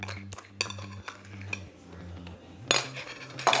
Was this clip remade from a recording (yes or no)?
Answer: no